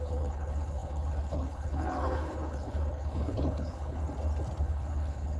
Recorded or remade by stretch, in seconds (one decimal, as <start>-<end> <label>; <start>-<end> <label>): 0.0-4.0 remade; 4.0-4.6 recorded; 4.6-5.4 remade